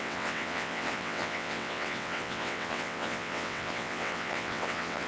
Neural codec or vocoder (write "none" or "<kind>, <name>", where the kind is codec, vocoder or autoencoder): vocoder, WaveNeXt